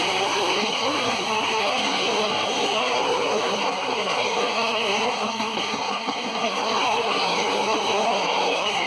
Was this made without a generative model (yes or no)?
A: no